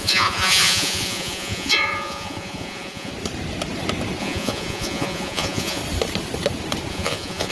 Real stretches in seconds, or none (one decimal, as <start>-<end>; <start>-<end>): 3.1-4.2; 5.8-6.9